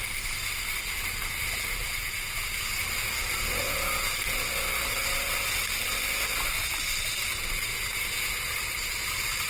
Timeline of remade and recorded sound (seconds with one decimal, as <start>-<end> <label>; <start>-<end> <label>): 0.0-1.8 recorded; 1.8-2.7 remade; 2.7-3.6 recorded; 3.6-4.1 remade; 4.1-7.7 recorded; 7.7-8.3 remade; 8.3-9.5 recorded